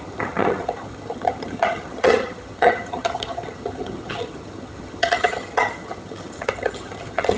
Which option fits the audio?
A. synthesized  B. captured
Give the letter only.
A